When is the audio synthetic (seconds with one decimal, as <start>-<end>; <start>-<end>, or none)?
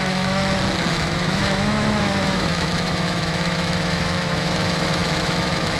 0.0-0.4; 0.9-5.8